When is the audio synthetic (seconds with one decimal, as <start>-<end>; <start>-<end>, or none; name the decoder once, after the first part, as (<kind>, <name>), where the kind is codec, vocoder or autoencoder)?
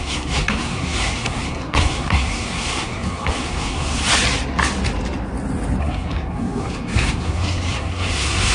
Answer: 0.0-4.0 (codec, SNAC); 5.8-8.5